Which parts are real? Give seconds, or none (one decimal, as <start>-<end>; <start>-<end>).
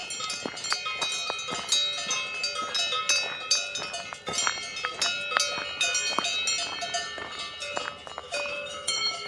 0.0-8.2